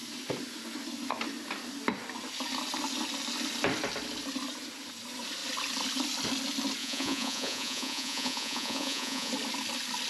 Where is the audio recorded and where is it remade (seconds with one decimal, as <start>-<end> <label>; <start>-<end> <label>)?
0.0-6.8 recorded; 6.8-9.3 remade; 9.3-10.1 recorded